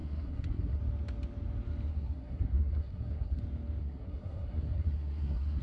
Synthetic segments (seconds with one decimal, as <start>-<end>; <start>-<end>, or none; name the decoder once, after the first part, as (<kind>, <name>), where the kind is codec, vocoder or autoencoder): 0.0-0.8 (codec, SNAC); 1.9-3.4; 3.8-5.6